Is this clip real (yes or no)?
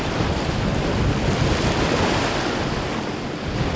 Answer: yes